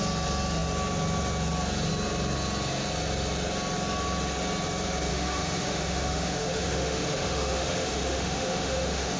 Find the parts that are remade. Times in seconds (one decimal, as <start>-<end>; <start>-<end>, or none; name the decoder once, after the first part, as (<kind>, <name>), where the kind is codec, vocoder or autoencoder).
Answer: 5.1-9.2 (autoencoder, DAC-VAE)